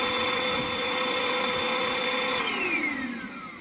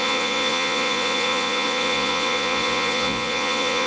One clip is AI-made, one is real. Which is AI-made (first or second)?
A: second